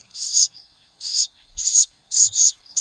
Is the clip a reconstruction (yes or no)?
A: yes